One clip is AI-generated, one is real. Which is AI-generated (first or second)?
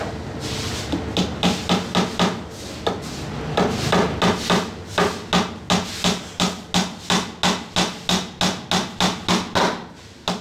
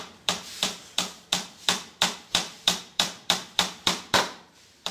second